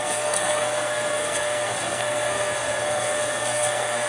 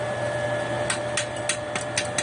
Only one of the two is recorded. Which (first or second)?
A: second